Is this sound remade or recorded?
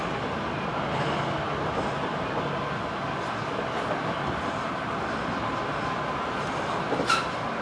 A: recorded